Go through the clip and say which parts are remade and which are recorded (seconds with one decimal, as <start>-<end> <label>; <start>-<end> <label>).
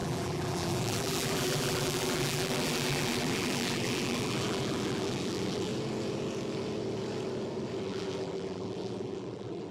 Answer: 0.0-5.7 remade; 5.7-7.8 recorded; 7.8-9.7 remade